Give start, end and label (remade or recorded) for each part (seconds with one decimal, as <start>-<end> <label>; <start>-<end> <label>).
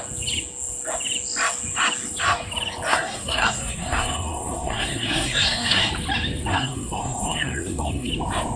0.0-2.9 recorded; 2.9-5.9 remade; 5.9-6.5 recorded; 6.5-8.1 remade; 8.1-8.6 recorded